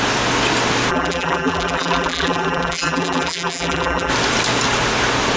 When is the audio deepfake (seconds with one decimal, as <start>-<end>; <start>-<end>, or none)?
0.9-4.1